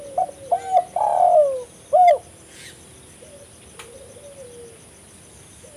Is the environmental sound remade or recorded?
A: recorded